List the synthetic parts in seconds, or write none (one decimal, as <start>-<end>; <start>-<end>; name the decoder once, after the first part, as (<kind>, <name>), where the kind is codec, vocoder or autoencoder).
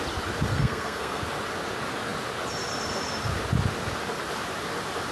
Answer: 0.5-1.2 (codec, SNAC)